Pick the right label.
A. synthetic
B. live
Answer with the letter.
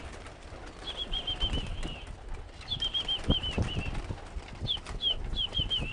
B